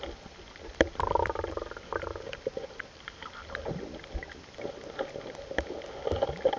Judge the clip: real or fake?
real